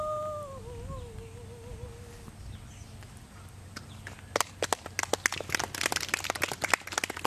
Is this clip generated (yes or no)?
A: no